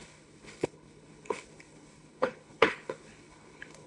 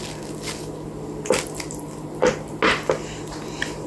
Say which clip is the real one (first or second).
second